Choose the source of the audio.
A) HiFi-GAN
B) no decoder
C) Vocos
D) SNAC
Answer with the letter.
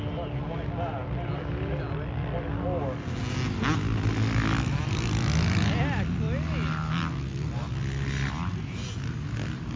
B